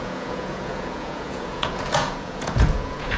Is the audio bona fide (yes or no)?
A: no